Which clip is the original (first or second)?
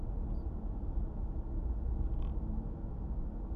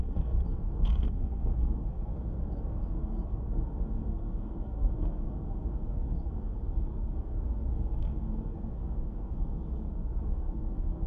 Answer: first